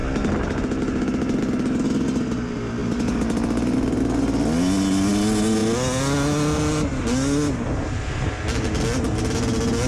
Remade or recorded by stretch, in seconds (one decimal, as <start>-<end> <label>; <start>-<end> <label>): 0.0-9.9 recorded